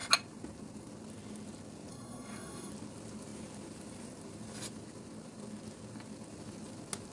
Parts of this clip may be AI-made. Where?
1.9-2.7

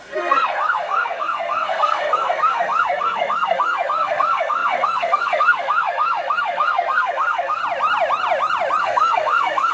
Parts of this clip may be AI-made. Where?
0.0-7.6; 8.8-9.7

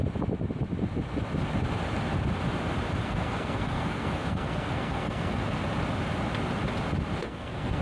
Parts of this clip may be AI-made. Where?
3.0-5.4; 7.2-7.8

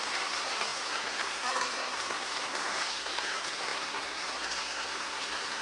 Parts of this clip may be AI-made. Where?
0.0-5.6

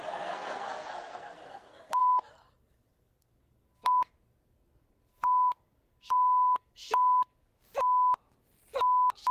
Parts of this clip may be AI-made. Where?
0.0-7.5

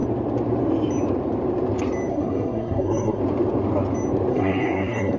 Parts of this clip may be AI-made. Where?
2.1-3.2; 4.3-5.2

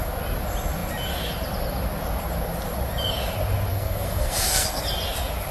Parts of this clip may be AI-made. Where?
3.7-4.8

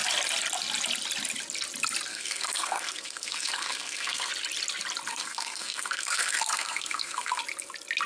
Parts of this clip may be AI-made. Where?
2.1-4.3; 5.1-7.4